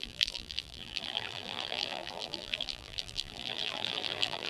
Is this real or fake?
fake